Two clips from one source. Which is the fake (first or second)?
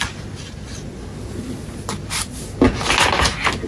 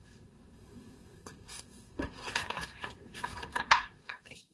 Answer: second